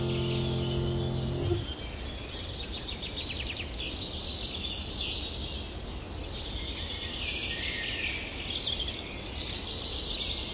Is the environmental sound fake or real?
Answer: real